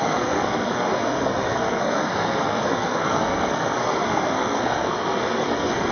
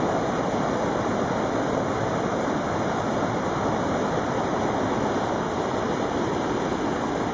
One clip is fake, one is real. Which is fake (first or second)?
first